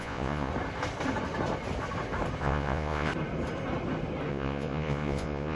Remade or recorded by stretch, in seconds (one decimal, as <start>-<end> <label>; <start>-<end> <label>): 0.0-0.5 remade; 0.5-2.4 recorded; 2.4-3.1 remade; 3.1-4.3 recorded; 4.3-5.6 remade